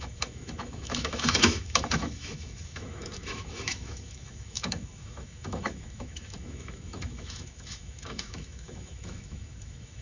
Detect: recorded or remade remade